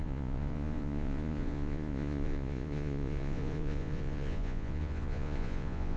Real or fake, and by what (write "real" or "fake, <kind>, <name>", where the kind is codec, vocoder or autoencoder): fake, vocoder, Vocos